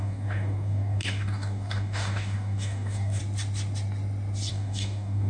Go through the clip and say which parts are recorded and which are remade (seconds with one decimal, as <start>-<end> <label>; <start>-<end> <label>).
0.0-3.2 remade; 3.2-4.5 recorded; 4.5-5.3 remade